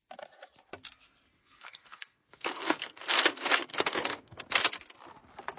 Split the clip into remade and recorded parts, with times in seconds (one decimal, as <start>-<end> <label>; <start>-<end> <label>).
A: 0.0-1.4 recorded; 1.4-3.2 remade; 3.2-3.7 recorded; 3.7-4.4 remade; 4.4-5.6 recorded